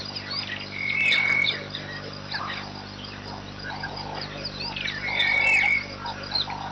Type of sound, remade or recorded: recorded